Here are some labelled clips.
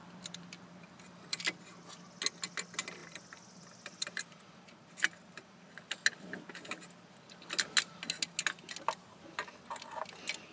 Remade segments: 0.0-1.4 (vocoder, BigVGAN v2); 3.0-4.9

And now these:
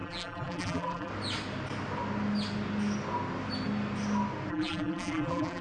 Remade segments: 0.0-1.1 (vocoder, BigVGAN v2); 4.5-5.6

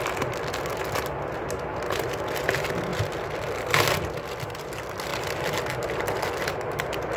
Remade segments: none

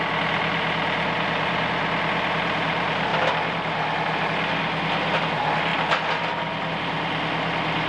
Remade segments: 0.0-3.1 (vocoder, BigVGAN v2); 5.2-5.7; 6.7-7.9

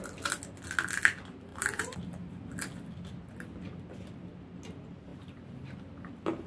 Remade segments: 1.5-2.5 (vocoder, BigVGAN v2); 5.1-6.1

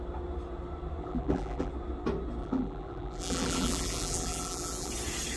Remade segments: 1.0-1.7 (vocoder, BigVGAN v2); 2.4-4.9

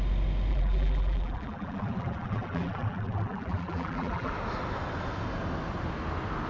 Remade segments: 0.5-4.3 (vocoder, BigVGAN v2)